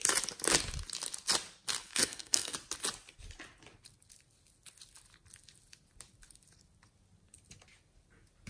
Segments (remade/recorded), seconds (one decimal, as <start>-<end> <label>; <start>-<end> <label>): 0.0-1.8 recorded; 1.8-2.5 remade; 2.5-8.5 recorded